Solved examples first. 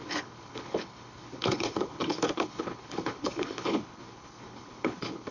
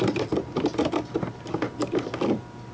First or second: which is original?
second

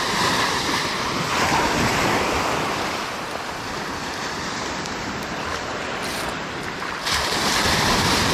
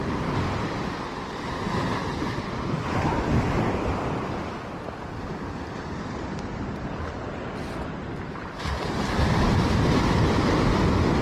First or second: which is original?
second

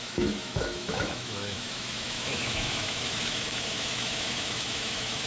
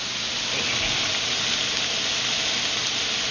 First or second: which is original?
second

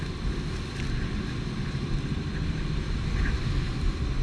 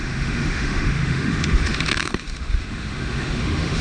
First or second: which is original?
first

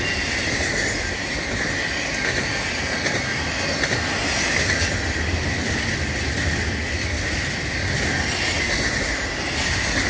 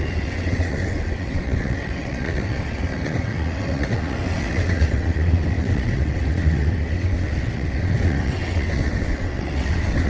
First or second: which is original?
first